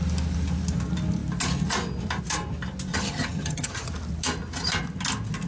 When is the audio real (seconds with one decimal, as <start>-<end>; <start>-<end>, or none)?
0.0-2.9; 3.9-5.5